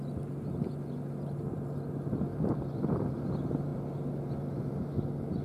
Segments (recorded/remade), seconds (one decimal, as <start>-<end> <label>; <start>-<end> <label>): 0.0-2.3 recorded; 2.3-3.1 remade; 3.1-5.4 recorded